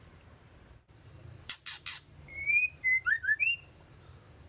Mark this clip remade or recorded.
remade